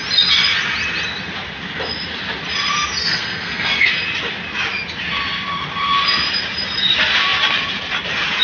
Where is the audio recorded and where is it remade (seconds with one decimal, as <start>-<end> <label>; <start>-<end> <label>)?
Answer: 0.0-3.0 recorded; 3.0-3.9 remade; 3.9-8.4 recorded